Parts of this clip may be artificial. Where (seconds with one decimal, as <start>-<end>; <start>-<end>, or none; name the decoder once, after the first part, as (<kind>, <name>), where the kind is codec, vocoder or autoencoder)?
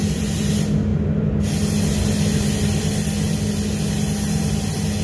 0.0-0.5 (vocoder, BigVGAN v2)